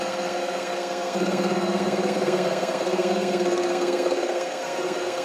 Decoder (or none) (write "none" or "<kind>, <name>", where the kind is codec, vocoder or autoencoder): codec, SNAC